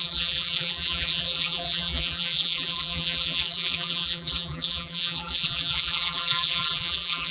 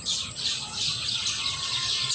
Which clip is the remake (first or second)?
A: first